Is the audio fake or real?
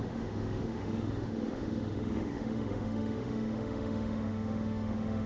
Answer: fake